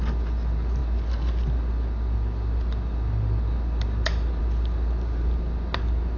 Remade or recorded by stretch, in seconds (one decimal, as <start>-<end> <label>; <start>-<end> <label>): 0.0-6.2 recorded